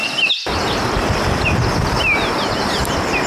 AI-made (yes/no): no